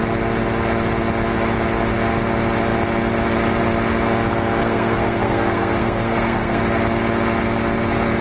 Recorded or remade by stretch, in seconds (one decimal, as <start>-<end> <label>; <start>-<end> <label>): 0.0-4.6 recorded; 4.6-6.6 remade; 6.6-8.2 recorded